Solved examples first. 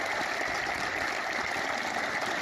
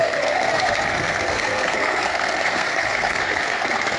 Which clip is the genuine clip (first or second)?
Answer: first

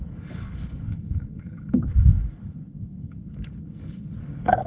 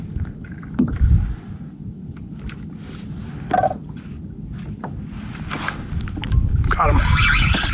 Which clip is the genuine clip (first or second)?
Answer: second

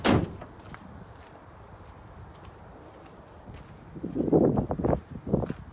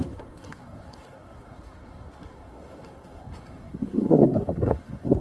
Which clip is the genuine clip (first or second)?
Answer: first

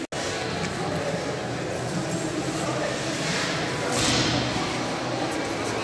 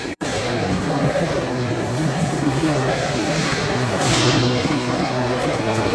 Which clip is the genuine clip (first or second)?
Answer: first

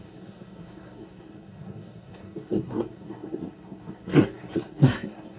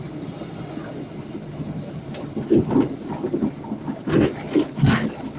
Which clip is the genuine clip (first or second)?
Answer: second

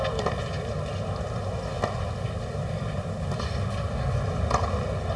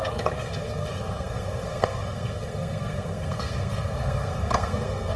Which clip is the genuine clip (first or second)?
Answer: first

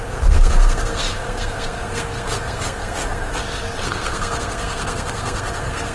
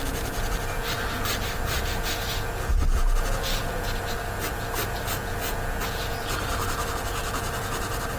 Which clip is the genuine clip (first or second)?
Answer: second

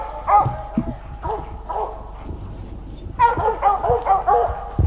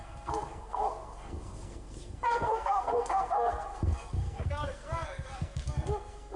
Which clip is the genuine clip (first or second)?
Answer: first